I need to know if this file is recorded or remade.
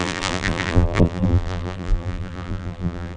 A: remade